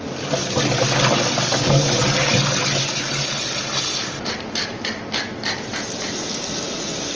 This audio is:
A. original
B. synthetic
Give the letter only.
A